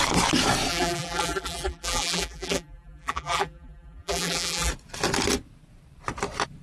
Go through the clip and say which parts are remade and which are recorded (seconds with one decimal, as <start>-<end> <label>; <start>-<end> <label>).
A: 0.0-0.7 recorded; 0.7-4.7 remade; 4.7-6.6 recorded